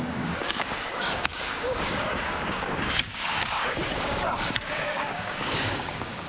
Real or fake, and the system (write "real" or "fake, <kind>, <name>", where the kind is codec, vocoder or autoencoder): fake, codec, DAC